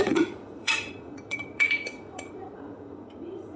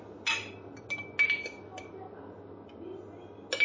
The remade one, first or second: first